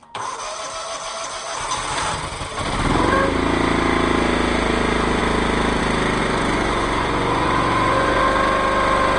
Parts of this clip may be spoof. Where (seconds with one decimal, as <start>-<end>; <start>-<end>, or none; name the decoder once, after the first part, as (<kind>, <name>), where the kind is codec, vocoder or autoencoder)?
6.2-8.2 (vocoder, Vocos)